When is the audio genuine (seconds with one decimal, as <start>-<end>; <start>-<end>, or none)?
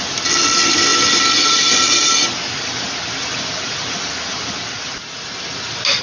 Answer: 0.0-6.0